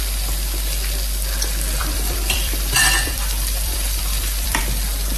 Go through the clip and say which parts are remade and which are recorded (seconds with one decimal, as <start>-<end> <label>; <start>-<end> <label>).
0.0-1.8 recorded; 1.8-4.6 remade; 4.6-5.2 recorded